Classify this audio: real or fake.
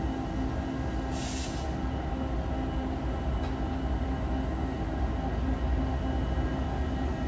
real